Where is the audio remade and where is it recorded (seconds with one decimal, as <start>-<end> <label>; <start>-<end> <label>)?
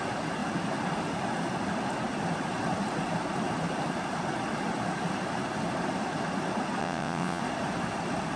0.0-6.8 recorded; 6.8-7.4 remade; 7.4-8.4 recorded